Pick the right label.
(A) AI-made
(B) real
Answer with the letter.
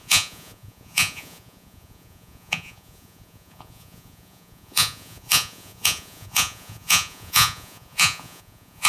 A